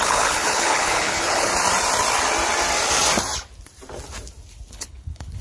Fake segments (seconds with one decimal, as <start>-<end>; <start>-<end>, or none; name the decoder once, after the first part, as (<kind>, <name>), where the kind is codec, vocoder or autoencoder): 0.0-1.5 (codec, HILCodec); 4.7-5.4